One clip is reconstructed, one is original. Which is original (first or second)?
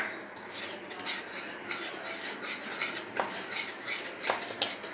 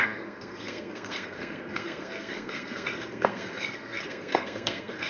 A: first